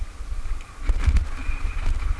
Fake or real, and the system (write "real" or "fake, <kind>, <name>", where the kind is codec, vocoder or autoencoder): fake, vocoder, BigVGAN v2